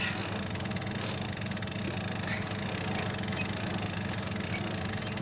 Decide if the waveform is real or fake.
real